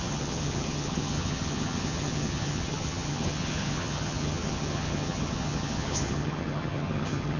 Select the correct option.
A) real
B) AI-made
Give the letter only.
B